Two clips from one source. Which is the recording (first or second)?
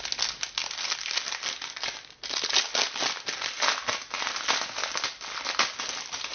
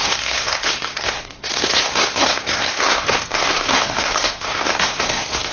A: first